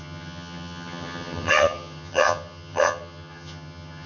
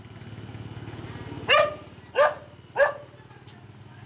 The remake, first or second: first